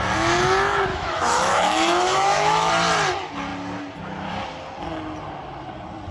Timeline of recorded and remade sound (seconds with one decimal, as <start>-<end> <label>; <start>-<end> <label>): 0.0-0.9 recorded; 0.9-2.7 remade; 2.7-6.1 recorded